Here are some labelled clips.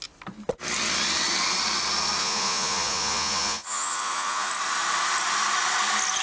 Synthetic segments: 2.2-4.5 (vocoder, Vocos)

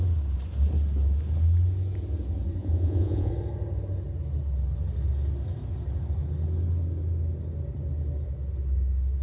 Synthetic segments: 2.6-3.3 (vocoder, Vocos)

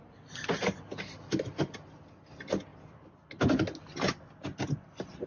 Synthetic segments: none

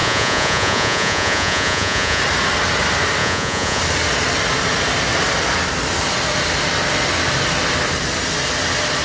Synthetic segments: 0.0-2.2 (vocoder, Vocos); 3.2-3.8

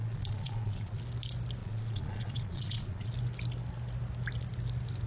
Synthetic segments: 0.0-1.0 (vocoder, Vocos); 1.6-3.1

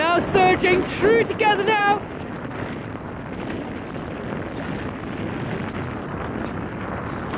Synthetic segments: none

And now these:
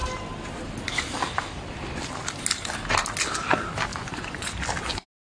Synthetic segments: 3.9-4.5 (vocoder, Vocos)